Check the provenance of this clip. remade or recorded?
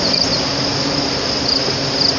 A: recorded